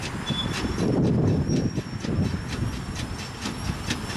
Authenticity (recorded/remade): recorded